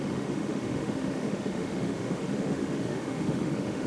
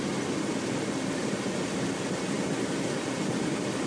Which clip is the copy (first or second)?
first